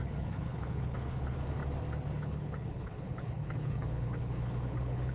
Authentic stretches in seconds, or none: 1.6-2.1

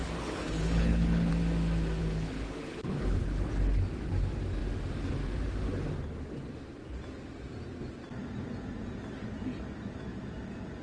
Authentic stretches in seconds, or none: 1.3-2.0; 3.5-10.8

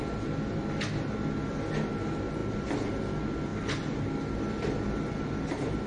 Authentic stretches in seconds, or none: 0.0-5.9

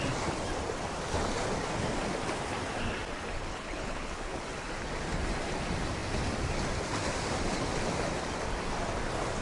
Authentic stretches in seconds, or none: 0.0-3.5; 4.4-9.4